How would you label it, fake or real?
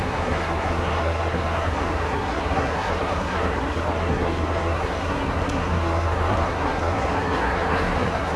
fake